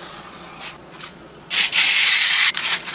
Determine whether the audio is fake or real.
fake